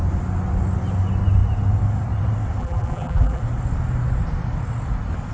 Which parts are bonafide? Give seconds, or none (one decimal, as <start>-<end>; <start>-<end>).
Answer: 0.0-2.6; 3.4-5.3